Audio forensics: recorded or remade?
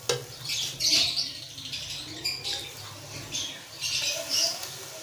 recorded